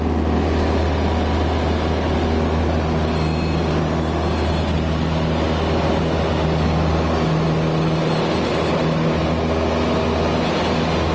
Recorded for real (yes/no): yes